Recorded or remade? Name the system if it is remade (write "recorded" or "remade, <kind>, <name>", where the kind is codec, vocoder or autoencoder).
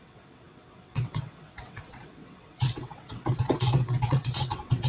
remade, vocoder, WaveNeXt